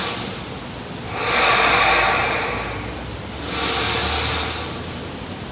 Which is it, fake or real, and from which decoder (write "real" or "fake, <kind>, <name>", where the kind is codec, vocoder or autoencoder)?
real